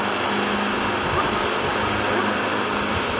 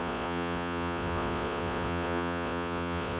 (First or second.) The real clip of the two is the first